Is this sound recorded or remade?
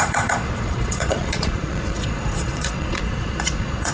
remade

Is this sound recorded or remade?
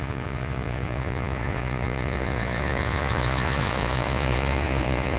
remade